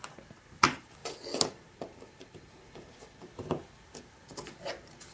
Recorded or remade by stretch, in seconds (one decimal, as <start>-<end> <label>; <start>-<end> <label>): 0.0-5.1 recorded

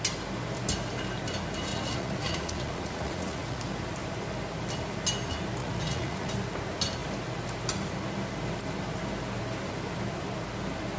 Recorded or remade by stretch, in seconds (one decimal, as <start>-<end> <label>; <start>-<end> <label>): 0.0-1.7 recorded; 1.7-3.6 remade; 3.6-5.6 recorded; 5.6-6.3 remade; 6.3-11.0 recorded

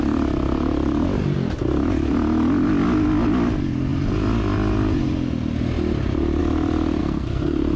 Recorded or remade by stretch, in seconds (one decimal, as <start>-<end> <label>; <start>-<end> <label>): 0.0-7.0 recorded; 7.0-7.8 remade